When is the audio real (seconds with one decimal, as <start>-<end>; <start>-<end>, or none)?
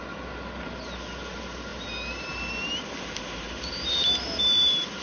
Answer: 0.0-5.0